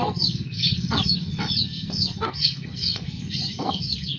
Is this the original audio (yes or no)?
no